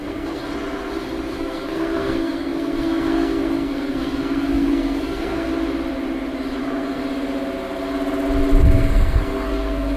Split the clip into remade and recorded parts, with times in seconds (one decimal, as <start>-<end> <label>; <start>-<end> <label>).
0.0-0.4 remade; 0.4-1.3 recorded; 1.3-5.5 remade; 5.5-6.6 recorded; 6.6-7.0 remade; 7.0-8.6 recorded; 8.6-10.0 remade